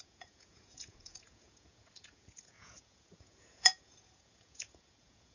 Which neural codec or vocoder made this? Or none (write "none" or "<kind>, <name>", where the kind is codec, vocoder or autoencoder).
vocoder, Vocos